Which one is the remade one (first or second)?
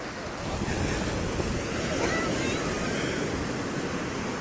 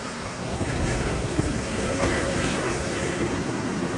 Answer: second